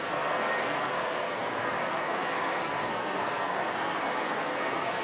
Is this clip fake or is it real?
fake